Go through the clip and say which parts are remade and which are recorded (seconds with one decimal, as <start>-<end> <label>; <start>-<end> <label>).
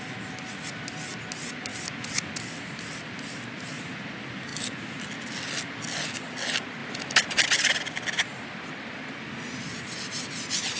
0.0-10.8 recorded